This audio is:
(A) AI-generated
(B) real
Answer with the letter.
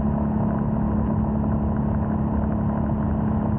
B